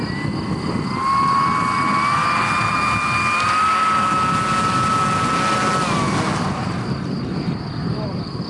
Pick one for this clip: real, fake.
real